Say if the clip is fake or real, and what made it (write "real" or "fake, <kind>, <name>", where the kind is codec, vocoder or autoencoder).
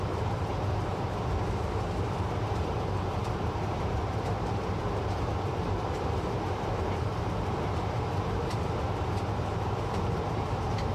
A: fake, vocoder, BigVGAN v2